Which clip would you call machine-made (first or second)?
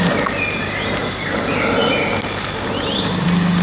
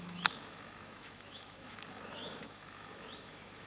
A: second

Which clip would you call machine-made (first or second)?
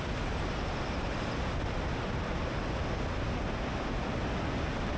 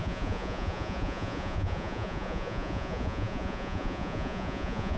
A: second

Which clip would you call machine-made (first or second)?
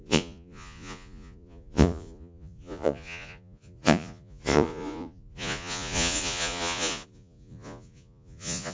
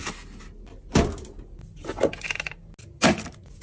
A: first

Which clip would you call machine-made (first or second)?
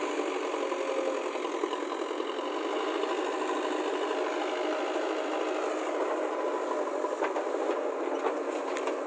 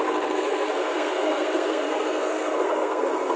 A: second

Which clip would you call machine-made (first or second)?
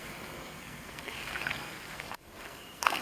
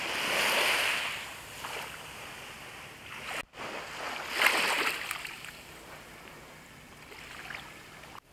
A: first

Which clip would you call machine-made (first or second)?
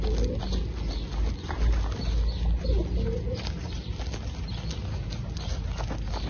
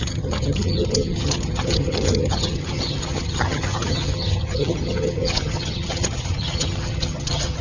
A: second